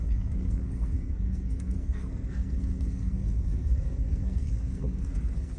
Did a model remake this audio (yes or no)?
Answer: yes